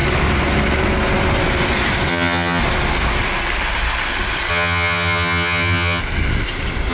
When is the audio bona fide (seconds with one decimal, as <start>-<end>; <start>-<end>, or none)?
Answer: 0.0-2.1; 2.6-4.5; 6.0-6.9